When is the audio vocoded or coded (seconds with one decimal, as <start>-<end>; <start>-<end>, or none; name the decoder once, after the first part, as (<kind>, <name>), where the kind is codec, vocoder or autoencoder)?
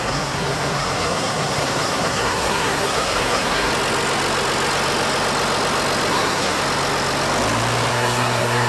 0.0-3.7 (codec, SNAC); 6.1-6.6; 7.9-8.7